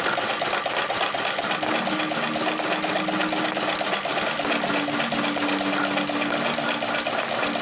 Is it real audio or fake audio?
real